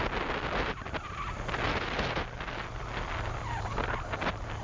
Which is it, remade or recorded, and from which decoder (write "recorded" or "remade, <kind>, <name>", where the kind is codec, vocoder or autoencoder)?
recorded